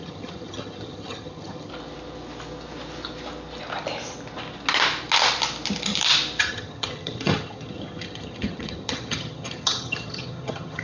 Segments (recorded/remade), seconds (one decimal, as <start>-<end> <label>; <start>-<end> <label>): 0.0-1.7 remade; 1.7-6.4 recorded; 6.4-10.8 remade